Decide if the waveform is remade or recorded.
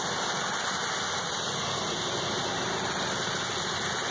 recorded